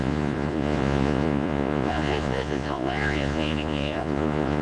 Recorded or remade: remade